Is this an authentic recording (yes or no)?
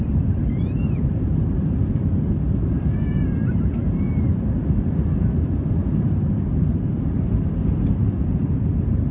no